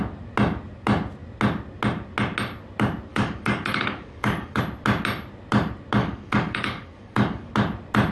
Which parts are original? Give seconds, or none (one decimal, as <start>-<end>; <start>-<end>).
0.0-3.1; 4.6-6.0; 7.5-8.1